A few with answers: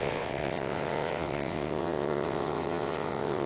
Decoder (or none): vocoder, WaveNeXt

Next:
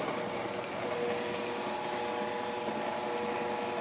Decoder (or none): none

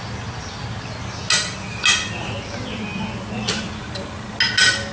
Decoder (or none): none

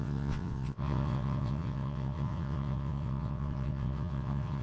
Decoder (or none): vocoder, WaveNeXt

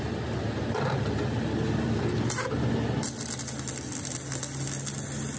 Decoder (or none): none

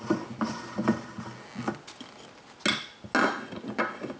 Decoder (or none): none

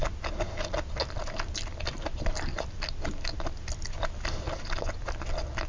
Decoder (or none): none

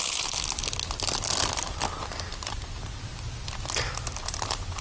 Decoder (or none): none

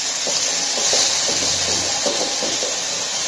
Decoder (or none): none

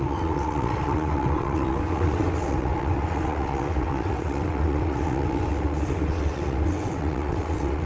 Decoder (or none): vocoder, WaveNeXt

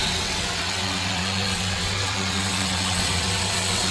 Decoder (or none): vocoder, WaveNeXt